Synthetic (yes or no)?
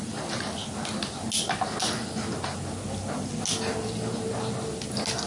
no